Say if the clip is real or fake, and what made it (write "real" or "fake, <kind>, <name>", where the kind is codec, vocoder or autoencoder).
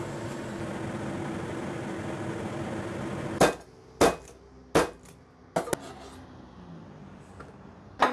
real